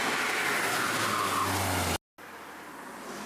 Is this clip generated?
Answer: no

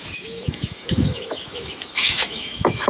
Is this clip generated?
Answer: yes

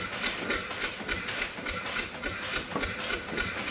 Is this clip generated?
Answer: no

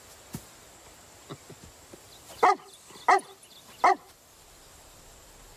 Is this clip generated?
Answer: no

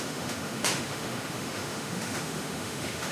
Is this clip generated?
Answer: yes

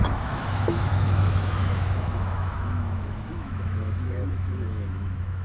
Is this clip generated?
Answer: yes